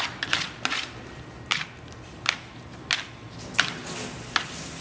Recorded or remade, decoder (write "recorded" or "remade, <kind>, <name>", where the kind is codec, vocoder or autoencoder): recorded